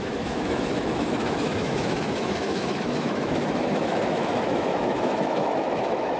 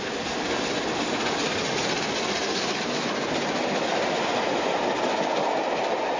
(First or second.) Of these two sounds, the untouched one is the second